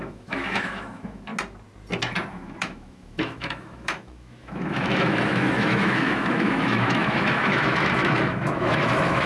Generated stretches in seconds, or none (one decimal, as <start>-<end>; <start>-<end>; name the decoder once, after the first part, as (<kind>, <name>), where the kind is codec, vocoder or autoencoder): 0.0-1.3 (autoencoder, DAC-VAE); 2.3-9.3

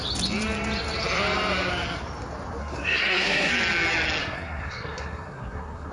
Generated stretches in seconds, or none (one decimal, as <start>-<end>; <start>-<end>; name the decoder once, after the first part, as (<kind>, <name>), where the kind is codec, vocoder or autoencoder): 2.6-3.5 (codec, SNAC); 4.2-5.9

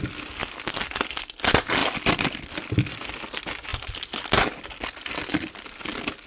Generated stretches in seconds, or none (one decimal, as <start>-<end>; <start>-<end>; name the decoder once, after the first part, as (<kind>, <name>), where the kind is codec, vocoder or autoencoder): 1.8-3.0 (vocoder, BigVGAN v2); 3.7-5.8

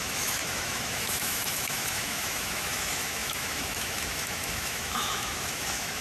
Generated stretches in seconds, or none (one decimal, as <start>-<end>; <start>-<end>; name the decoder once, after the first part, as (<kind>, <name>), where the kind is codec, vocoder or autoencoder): 0.0-6.0 (autoencoder, DAC-VAE)

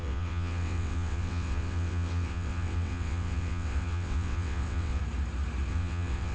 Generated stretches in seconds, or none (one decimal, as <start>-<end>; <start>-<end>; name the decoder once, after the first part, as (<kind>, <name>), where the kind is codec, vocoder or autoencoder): 0.0-5.0 (vocoder, WaveNeXt); 5.7-6.3

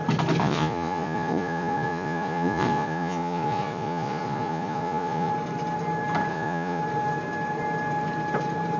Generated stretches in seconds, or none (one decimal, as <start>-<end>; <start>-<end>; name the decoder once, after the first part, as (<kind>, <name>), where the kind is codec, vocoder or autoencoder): 0.4-5.3 (vocoder, Vocos); 6.3-6.8

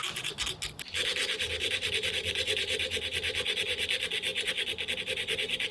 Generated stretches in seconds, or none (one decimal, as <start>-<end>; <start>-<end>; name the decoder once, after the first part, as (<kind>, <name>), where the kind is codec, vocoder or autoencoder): none

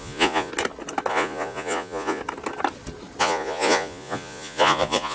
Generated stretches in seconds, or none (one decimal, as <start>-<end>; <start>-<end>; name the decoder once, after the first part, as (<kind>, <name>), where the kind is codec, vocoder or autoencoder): 0.0-0.5 (vocoder, Vocos); 1.1-2.2; 3.2-5.1